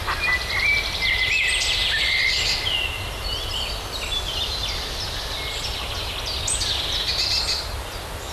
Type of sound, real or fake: real